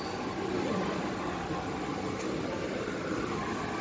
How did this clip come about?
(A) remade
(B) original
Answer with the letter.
B